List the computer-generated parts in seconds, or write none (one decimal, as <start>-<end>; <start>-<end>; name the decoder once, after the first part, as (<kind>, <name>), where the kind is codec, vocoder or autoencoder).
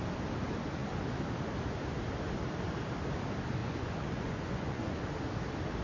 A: 3.6-5.0 (vocoder, Vocos)